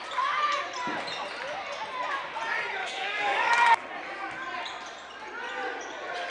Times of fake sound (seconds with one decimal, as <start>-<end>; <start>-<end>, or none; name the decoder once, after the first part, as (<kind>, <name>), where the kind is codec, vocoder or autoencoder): 2.8-3.5 (codec, DAC)